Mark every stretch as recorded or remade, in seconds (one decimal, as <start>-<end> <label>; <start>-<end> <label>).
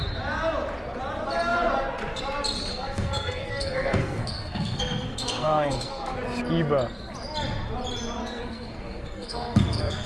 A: 0.0-2.7 recorded; 2.7-6.1 remade; 6.1-8.2 recorded; 8.2-10.1 remade